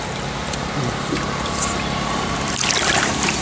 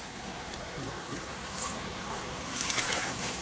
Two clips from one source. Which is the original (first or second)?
first